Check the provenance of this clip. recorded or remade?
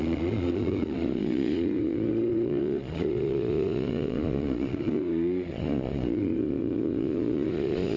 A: remade